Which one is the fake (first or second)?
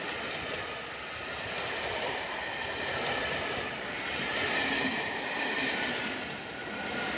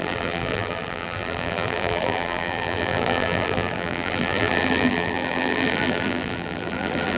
second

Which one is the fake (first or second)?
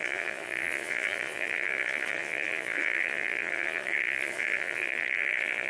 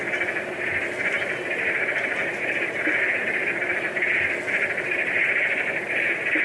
first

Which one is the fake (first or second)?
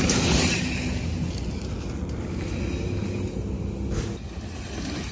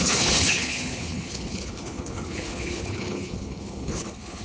second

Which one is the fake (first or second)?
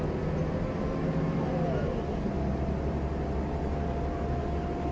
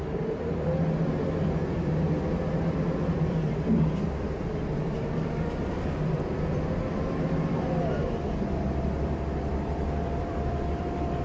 second